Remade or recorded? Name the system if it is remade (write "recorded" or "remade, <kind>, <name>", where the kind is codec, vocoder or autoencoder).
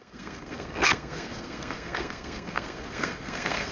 remade, codec, SNAC